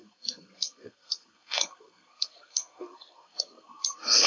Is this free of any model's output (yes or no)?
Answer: no